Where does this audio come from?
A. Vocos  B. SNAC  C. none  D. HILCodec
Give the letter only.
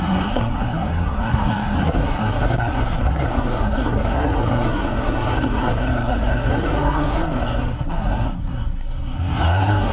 B